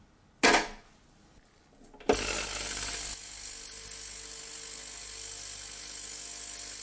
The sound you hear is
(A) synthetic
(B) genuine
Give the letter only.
B